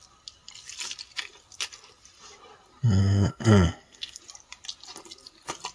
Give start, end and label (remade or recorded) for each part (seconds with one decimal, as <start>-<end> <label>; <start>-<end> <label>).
0.0-3.0 recorded; 3.0-4.2 remade; 4.2-5.7 recorded